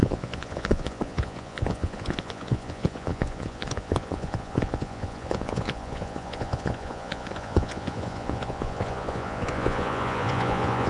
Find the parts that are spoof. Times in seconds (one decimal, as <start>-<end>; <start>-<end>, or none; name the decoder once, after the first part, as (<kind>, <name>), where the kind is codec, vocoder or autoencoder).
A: 0.0-10.9 (vocoder, Vocos)